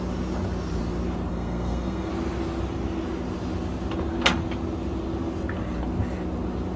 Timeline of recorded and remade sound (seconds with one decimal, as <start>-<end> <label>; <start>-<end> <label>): 0.0-1.3 recorded; 1.3-2.1 remade; 2.1-6.8 recorded